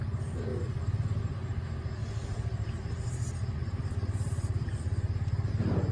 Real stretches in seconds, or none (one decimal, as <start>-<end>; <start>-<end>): 0.0-0.5; 1.2-2.0; 5.5-5.9